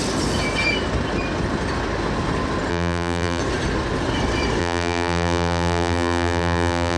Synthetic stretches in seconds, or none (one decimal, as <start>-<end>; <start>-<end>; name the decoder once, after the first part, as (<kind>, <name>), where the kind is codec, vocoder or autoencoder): 2.7-3.4 (vocoder, BigVGAN v2); 4.6-7.0